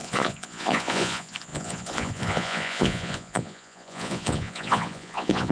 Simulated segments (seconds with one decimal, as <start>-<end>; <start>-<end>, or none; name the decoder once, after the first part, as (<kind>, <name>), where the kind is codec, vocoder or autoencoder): 0.0-5.5 (vocoder, Vocos)